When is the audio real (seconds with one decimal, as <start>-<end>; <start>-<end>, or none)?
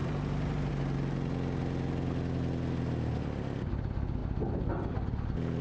0.7-5.6